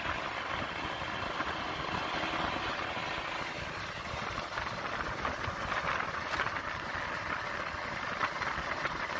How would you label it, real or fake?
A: real